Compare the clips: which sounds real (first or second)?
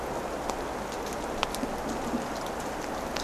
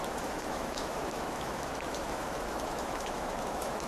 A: first